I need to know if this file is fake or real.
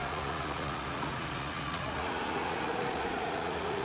fake